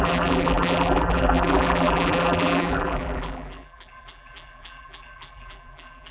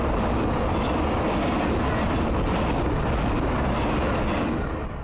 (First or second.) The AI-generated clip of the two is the first